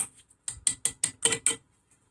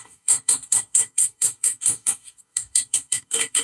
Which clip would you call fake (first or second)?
second